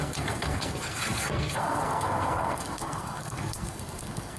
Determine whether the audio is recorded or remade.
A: remade